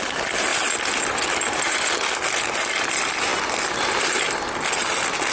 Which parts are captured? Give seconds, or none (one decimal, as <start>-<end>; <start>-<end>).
0.0-5.3